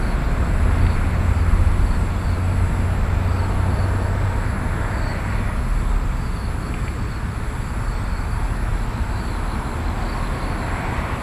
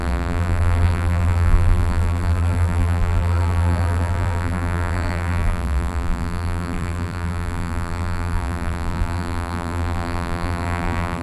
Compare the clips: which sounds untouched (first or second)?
first